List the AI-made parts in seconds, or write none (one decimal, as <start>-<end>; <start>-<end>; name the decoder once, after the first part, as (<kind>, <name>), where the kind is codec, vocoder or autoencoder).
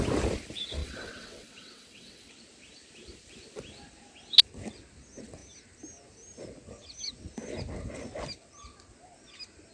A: 0.8-2.3 (vocoder, WaveNeXt)